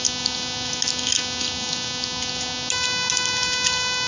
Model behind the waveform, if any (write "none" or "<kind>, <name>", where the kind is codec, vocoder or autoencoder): none